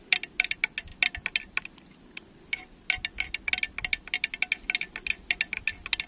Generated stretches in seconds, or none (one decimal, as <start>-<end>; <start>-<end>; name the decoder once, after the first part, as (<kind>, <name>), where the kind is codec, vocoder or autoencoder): none